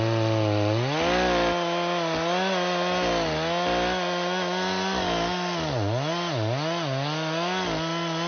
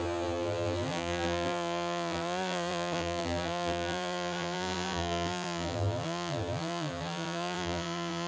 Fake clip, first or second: second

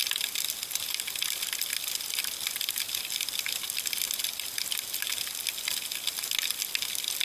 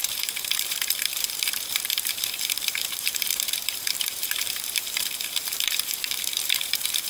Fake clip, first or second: second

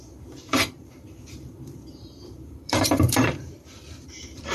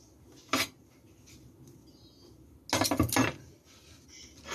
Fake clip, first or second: first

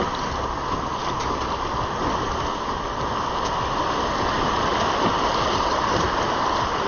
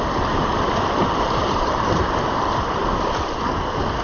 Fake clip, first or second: second